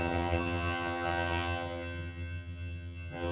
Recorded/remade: remade